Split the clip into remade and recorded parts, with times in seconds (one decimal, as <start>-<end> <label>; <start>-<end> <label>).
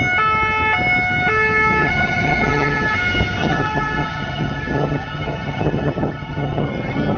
0.0-1.8 recorded; 1.8-2.9 remade; 2.9-3.4 recorded; 3.4-7.2 remade